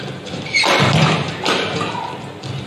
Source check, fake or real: real